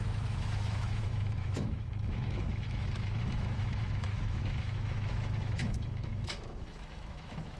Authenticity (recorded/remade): remade